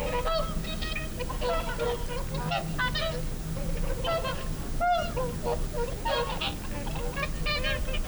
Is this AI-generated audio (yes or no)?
no